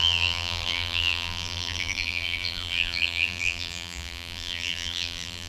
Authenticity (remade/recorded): remade